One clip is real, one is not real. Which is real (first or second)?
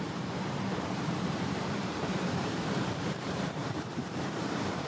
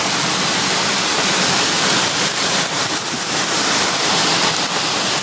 second